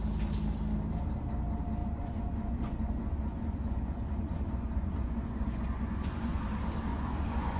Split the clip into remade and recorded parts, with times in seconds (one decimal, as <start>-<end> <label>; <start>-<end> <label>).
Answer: 0.0-1.8 recorded; 1.8-6.4 remade; 6.4-6.9 recorded; 6.9-7.6 remade